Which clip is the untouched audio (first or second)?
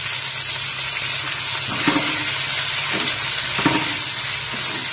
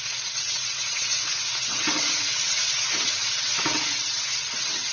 first